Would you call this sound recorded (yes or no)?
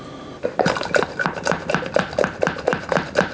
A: yes